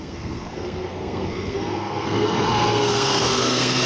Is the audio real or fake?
fake